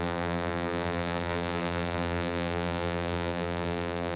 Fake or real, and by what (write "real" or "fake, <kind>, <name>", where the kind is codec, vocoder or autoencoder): fake, vocoder, BigVGAN v2